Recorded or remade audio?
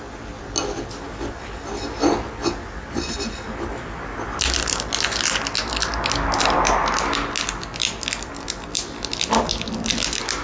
recorded